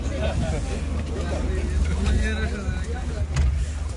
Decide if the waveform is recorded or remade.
recorded